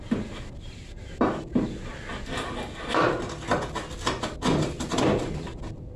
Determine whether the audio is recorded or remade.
recorded